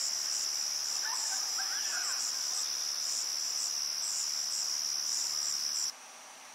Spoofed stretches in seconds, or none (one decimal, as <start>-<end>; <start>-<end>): 1.2-2.2